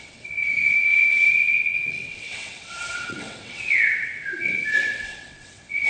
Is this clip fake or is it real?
fake